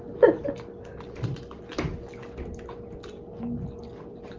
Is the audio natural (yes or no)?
yes